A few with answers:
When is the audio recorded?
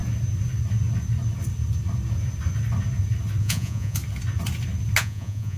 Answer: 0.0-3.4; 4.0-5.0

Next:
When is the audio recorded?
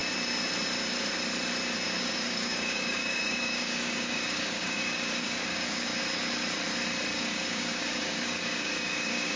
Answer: 0.0-2.0; 5.9-7.1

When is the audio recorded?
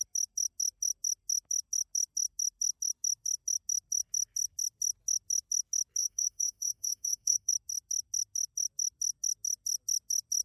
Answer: 0.0-6.0; 7.5-10.4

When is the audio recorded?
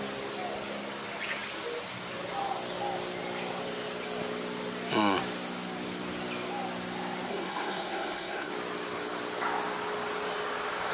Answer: 0.0-7.3; 8.5-10.9